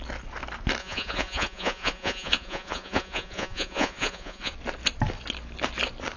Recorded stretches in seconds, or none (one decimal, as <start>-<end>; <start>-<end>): 0.0-0.8; 4.5-6.2